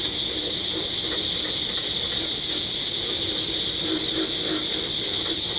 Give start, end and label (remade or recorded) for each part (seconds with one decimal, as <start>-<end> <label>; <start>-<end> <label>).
0.0-5.6 recorded